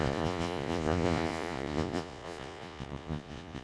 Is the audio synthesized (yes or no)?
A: yes